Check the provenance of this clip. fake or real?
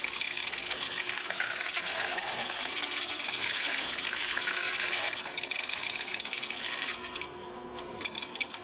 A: fake